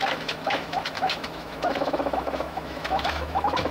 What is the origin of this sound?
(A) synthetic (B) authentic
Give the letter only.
A